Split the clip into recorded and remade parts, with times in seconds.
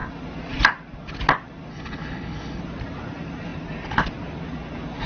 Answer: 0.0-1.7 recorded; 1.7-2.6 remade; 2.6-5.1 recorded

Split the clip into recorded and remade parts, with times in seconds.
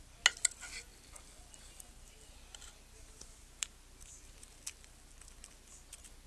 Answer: 0.0-6.3 recorded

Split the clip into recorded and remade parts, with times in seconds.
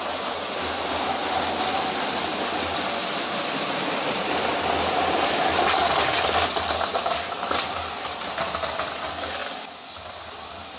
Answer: 0.0-10.8 recorded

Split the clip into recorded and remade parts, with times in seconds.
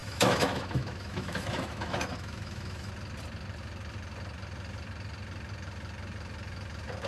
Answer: 0.0-2.9 remade; 2.9-7.1 recorded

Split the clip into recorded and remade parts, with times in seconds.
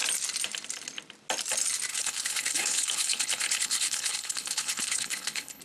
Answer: 0.0-1.9 recorded; 1.9-5.6 remade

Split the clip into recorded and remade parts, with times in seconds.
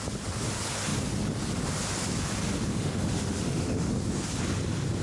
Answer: 0.0-2.7 recorded; 2.7-3.9 remade; 3.9-5.0 recorded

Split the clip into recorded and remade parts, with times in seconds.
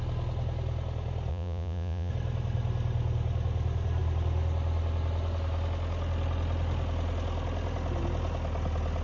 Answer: 0.0-1.3 recorded; 1.3-2.1 remade; 2.1-9.0 recorded